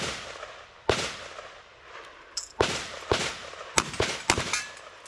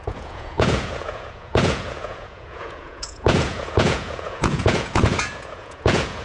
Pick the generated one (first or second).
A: second